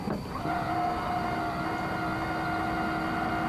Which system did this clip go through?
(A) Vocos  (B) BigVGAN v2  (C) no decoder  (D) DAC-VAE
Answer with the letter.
C